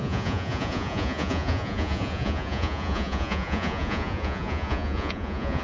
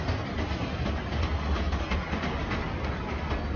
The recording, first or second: second